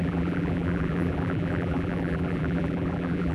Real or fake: fake